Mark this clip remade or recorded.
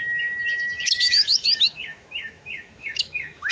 remade